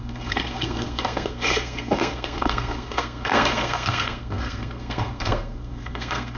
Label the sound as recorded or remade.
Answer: remade